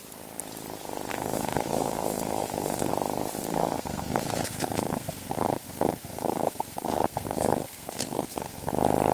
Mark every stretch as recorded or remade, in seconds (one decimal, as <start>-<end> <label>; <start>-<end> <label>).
0.0-1.1 recorded; 1.1-2.9 remade; 2.9-3.4 recorded; 3.4-8.7 remade; 8.7-9.1 recorded